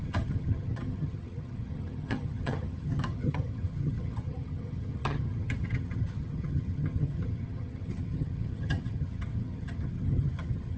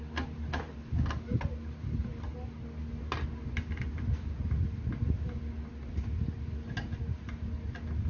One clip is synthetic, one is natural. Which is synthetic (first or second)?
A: first